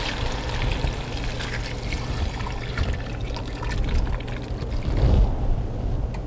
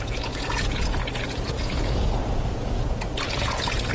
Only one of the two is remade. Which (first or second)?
second